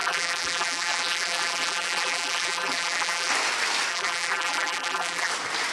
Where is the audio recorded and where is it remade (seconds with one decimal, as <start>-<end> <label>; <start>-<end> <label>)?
0.0-3.3 remade; 3.3-3.9 recorded; 3.9-5.3 remade; 5.3-5.7 recorded